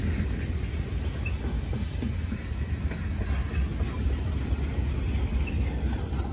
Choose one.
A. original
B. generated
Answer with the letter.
A